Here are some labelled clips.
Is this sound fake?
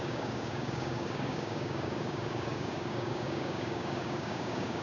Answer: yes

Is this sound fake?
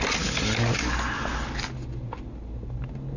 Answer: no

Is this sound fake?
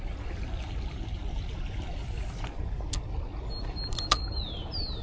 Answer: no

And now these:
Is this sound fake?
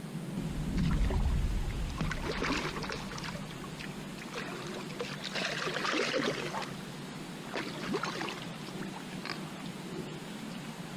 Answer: no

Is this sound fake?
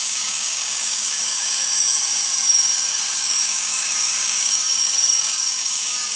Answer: yes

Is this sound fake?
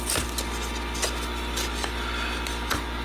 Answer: no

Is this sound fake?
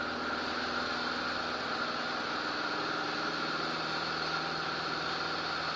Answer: no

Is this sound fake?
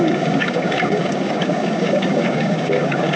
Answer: yes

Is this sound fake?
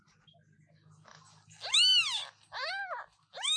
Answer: no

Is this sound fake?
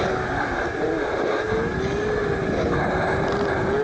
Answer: no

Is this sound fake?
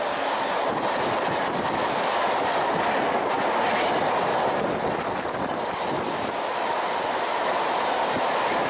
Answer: no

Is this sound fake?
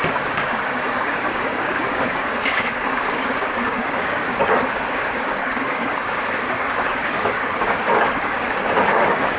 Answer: yes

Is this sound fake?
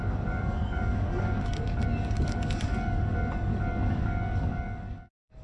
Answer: yes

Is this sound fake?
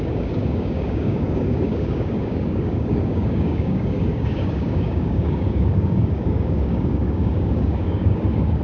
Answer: yes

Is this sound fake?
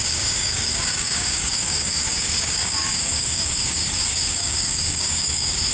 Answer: yes